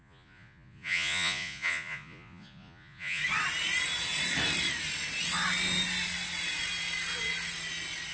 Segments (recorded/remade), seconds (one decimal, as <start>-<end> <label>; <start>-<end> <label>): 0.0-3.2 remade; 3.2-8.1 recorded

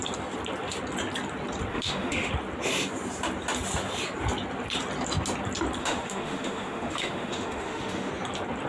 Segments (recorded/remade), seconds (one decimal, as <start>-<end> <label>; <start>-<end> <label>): 0.0-1.7 recorded; 1.7-2.3 remade; 2.3-5.8 recorded; 5.8-8.1 remade; 8.1-8.7 recorded

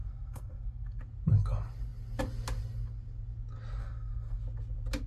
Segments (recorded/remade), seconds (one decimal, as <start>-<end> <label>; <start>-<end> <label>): 0.0-1.0 remade; 1.0-3.8 recorded; 3.8-4.4 remade; 4.4-5.1 recorded

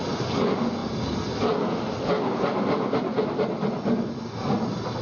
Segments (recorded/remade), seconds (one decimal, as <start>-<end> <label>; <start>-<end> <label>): 0.0-5.0 recorded

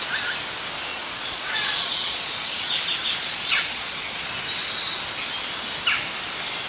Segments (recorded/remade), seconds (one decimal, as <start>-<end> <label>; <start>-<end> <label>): 0.0-0.9 recorded; 0.9-4.3 remade; 4.3-6.7 recorded